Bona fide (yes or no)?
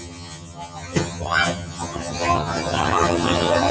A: no